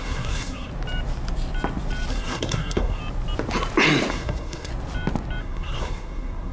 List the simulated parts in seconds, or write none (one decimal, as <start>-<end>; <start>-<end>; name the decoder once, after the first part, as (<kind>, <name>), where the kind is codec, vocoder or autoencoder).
0.0-0.7 (codec, SNAC); 2.1-3.0; 4.1-4.7; 5.4-6.5